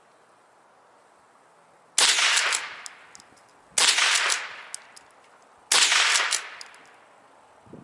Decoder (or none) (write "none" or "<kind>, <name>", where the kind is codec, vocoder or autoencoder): none